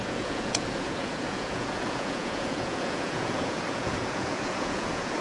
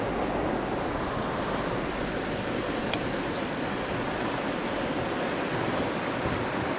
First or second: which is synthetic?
first